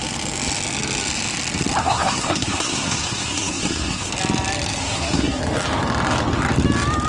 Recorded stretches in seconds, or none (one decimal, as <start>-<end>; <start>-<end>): 0.0-1.8; 4.1-4.8; 5.4-7.1